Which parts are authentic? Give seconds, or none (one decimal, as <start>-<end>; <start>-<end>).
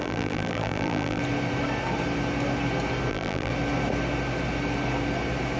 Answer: 1.2-3.1; 3.5-5.6